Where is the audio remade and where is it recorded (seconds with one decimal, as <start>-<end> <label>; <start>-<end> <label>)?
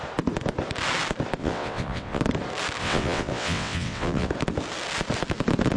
0.0-1.4 recorded; 1.4-2.2 remade; 2.2-2.8 recorded; 2.8-4.3 remade; 4.3-5.8 recorded